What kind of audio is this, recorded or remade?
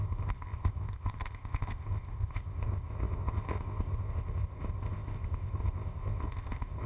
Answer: remade